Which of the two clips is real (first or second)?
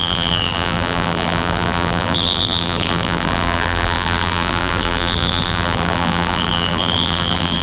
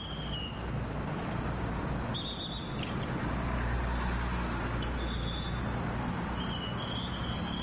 second